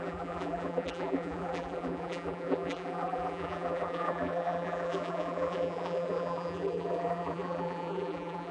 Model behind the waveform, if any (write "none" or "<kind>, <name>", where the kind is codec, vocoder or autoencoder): vocoder, BigVGAN v2